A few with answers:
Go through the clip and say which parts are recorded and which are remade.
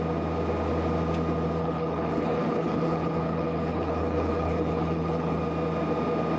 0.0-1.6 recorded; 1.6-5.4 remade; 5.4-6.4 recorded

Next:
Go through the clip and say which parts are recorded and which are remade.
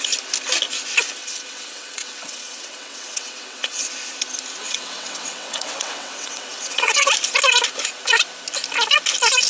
0.0-1.2 recorded; 1.2-3.8 remade; 3.8-4.6 recorded; 4.6-7.1 remade; 7.1-9.5 recorded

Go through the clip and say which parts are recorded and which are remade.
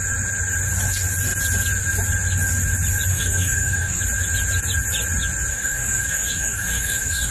0.0-3.1 recorded; 3.1-4.0 remade; 4.0-5.5 recorded; 5.5-7.3 remade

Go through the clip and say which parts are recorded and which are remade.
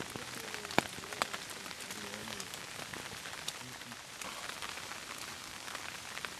0.0-2.2 recorded; 2.2-2.8 remade; 2.8-5.3 recorded; 5.3-5.8 remade; 5.8-6.4 recorded